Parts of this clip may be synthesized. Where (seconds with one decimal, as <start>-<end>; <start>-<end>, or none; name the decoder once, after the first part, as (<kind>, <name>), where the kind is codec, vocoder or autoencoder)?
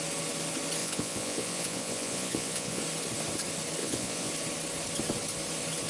0.8-2.8 (vocoder, Vocos); 3.8-4.3